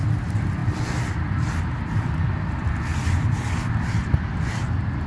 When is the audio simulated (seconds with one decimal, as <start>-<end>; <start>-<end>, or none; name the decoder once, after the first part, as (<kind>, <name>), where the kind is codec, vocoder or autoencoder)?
none